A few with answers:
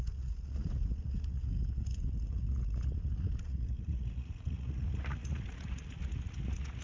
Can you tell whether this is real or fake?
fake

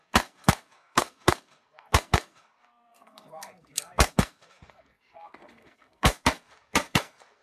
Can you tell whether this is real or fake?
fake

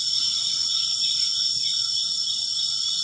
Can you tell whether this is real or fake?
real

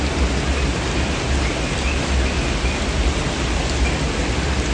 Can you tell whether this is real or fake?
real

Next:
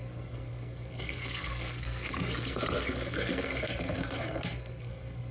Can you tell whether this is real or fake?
fake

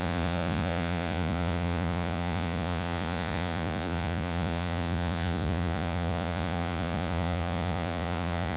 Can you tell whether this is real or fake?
fake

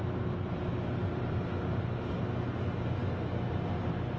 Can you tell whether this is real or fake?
real